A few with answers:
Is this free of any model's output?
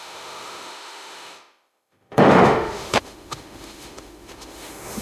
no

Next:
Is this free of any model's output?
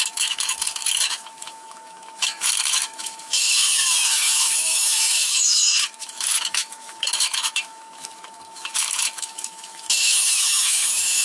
no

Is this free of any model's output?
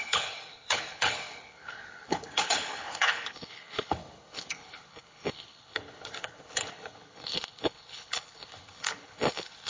no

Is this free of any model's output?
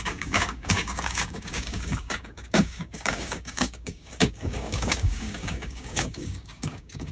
no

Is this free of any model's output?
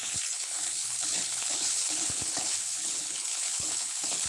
no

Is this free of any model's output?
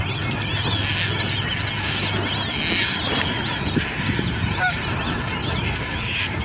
yes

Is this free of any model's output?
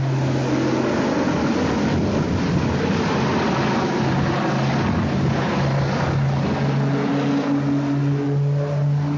yes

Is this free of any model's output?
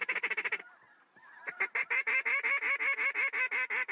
yes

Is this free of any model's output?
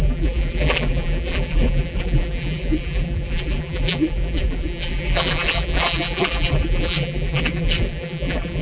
no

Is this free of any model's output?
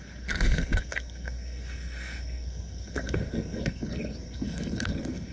no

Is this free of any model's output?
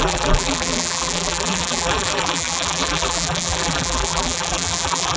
no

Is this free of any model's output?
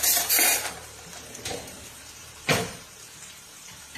no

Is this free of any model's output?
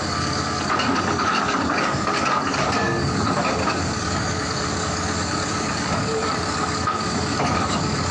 no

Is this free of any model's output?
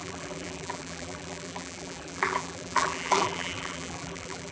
no